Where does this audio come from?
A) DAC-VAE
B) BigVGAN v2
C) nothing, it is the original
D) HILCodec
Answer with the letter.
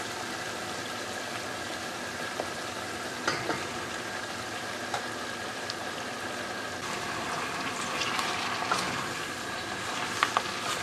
B